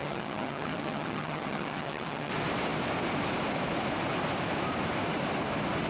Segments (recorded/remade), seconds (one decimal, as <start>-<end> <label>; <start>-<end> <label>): 0.0-2.3 remade; 2.3-5.9 recorded